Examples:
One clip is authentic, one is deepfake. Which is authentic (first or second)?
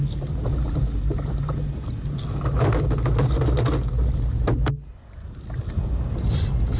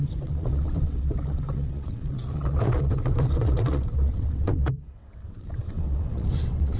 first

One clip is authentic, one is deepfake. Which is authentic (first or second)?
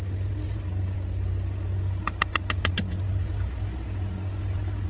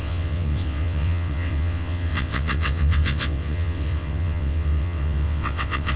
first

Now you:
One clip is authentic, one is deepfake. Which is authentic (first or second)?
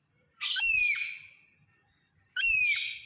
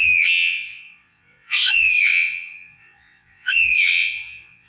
first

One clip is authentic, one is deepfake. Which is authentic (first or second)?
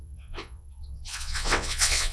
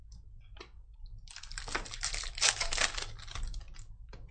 second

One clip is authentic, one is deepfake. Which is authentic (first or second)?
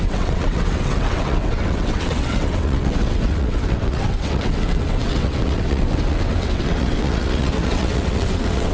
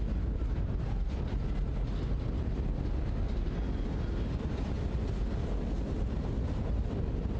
second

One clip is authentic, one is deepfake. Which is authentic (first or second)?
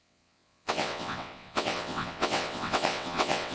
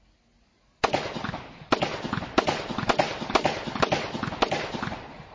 second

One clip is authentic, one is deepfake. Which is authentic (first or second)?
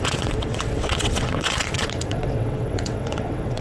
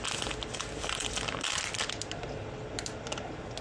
second